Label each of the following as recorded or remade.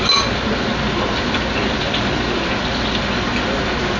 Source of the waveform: recorded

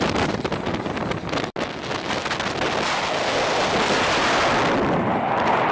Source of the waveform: recorded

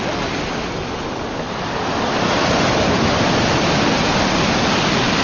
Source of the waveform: recorded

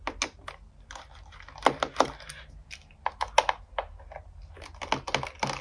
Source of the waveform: recorded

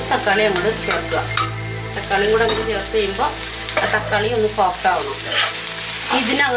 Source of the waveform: recorded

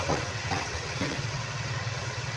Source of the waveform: remade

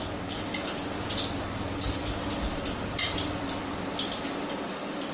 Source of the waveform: recorded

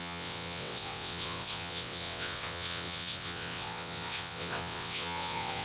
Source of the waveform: remade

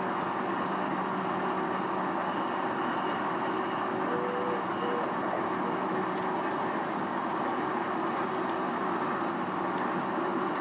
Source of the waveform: recorded